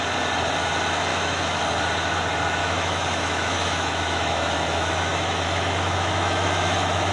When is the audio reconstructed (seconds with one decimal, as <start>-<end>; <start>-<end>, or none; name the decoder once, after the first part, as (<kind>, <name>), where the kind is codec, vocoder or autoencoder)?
1.1-1.6 (autoencoder, DAC-VAE); 2.6-7.1